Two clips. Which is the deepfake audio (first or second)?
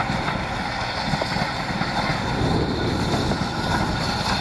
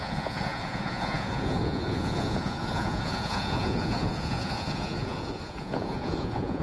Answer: second